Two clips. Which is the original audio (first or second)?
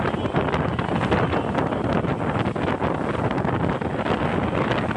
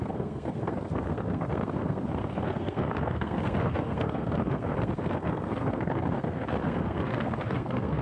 first